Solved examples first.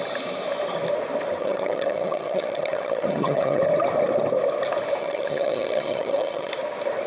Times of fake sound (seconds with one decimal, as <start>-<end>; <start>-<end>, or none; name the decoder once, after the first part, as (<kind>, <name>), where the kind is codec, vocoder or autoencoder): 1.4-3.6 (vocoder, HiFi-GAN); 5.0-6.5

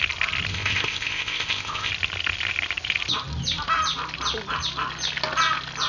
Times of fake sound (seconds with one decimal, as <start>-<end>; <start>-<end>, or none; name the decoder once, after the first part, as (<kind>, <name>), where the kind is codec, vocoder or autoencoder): 0.5-1.9 (codec, ZipCodec)

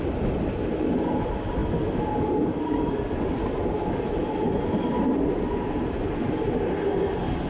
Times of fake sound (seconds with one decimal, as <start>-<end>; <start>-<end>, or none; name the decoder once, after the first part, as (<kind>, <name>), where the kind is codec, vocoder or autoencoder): none

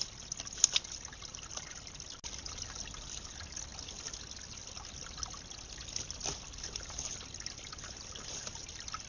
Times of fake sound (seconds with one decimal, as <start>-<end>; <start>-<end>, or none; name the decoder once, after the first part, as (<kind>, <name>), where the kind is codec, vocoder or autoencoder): none